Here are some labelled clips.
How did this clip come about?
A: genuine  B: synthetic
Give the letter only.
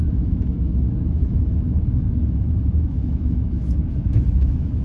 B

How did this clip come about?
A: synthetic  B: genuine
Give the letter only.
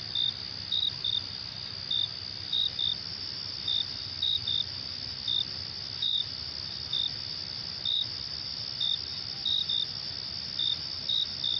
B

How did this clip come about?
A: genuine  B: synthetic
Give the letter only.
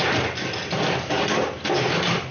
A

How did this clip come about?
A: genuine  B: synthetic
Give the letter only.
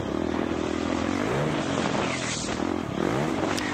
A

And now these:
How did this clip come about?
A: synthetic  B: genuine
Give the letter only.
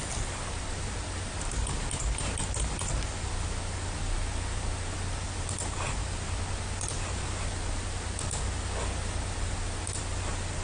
B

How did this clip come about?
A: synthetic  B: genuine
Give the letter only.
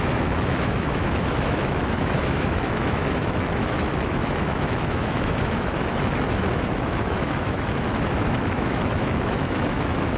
A